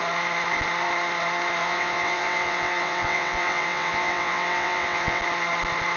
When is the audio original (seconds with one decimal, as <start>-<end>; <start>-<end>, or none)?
0.0-1.6; 5.2-6.0